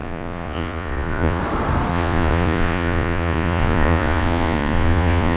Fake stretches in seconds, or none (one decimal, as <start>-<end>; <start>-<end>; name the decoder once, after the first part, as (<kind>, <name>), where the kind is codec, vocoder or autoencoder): 0.0-1.4 (vocoder, Vocos); 1.9-5.4